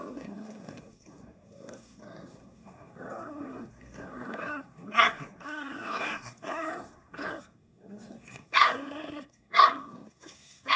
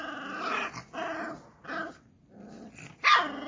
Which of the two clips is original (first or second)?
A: second